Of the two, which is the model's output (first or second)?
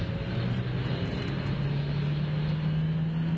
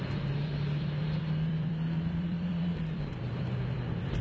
second